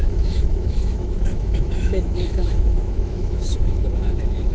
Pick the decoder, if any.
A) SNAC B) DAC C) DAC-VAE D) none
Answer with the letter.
C